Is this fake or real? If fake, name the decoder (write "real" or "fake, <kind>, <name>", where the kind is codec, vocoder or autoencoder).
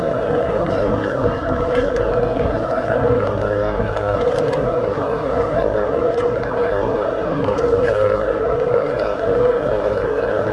fake, codec, SNAC